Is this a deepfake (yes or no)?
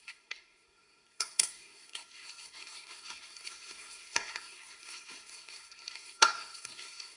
yes